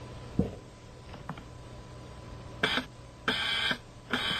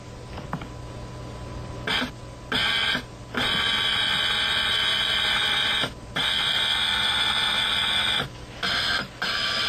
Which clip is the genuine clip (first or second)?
second